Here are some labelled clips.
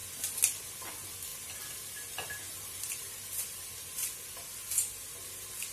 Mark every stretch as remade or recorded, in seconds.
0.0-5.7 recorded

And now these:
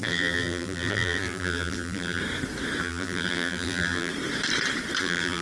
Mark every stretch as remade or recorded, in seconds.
0.0-2.2 remade; 2.2-2.8 recorded; 2.8-4.1 remade; 4.1-5.0 recorded; 5.0-5.4 remade

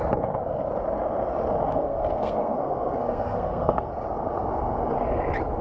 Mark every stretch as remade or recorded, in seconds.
0.0-1.7 recorded; 1.7-3.9 remade; 3.9-5.6 recorded

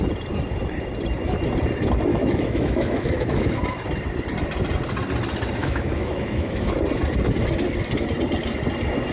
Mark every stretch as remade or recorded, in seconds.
0.0-2.1 recorded; 2.1-3.6 remade; 3.6-5.6 recorded; 5.6-6.7 remade; 6.7-9.1 recorded

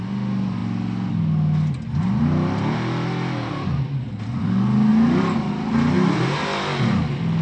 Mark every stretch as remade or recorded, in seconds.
0.0-7.4 recorded